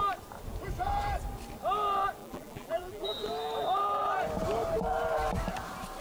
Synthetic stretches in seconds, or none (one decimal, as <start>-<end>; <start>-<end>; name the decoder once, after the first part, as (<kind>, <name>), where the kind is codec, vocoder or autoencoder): 2.2-3.1 (vocoder, BigVGAN v2)